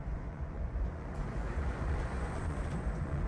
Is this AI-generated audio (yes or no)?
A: yes